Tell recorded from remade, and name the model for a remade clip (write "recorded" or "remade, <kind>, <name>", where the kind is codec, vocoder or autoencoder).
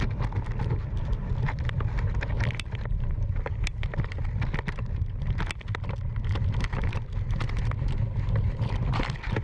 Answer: recorded